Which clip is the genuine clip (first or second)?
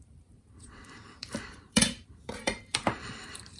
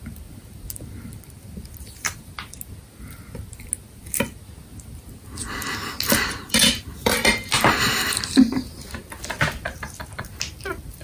second